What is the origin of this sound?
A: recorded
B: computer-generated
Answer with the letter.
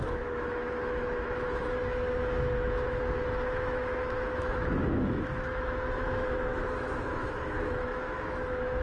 B